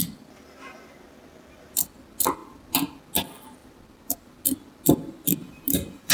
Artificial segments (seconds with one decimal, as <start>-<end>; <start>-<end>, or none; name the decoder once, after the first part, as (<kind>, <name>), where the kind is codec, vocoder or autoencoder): 3.6-4.4 (vocoder, BigVGAN v2); 5.4-6.1